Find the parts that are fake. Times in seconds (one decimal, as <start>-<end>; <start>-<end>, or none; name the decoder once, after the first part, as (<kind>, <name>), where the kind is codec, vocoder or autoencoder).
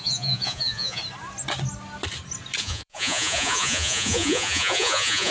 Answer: 0.0-1.0 (vocoder, Vocos); 2.6-5.3